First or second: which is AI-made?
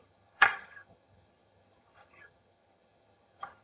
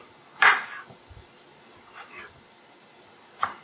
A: first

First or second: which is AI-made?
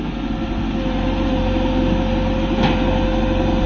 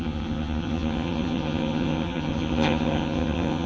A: second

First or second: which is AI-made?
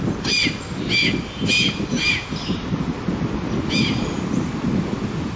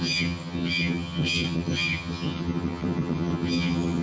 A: second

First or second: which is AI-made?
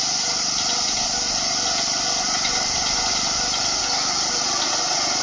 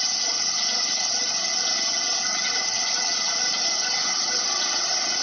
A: second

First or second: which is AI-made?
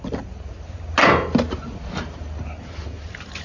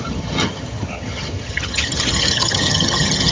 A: second